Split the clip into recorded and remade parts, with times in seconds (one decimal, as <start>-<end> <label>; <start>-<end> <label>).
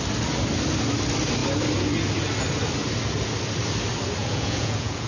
0.0-4.2 recorded; 4.2-5.1 remade